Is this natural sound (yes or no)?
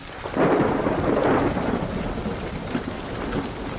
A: yes